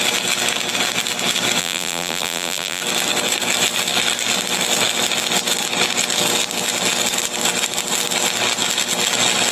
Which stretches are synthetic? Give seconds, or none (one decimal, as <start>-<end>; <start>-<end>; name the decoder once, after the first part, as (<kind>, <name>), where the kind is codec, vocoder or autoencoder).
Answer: 1.6-2.8 (vocoder, BigVGAN v2)